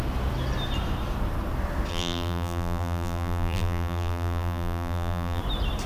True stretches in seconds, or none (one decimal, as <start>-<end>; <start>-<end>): 0.0-1.9; 5.4-5.9